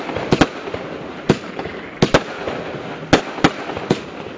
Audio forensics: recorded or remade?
recorded